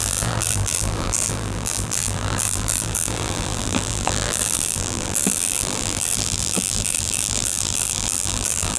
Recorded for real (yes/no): no